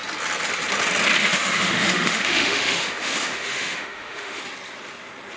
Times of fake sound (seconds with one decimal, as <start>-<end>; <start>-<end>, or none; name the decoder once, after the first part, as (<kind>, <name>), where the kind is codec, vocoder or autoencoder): 1.2-4.4 (autoencoder, DAC-VAE)